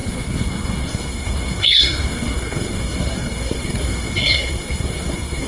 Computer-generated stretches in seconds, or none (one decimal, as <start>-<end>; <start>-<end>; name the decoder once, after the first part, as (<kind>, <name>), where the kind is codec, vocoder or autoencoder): 0.0-5.5 (codec, SNAC)